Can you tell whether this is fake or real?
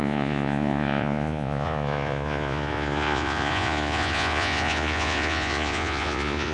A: fake